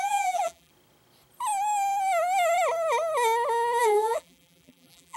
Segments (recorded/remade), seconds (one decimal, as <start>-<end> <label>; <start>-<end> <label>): 0.0-0.7 remade; 0.7-3.8 recorded; 3.8-5.2 remade